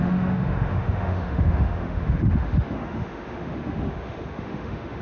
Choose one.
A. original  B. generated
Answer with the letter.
B